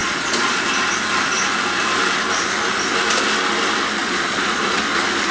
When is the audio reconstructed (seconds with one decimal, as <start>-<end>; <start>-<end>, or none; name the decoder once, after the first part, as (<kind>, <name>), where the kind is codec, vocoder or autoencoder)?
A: 0.0-0.6 (vocoder, Vocos); 4.0-4.8